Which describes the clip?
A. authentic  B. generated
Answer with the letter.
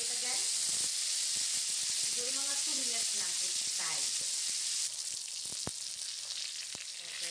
A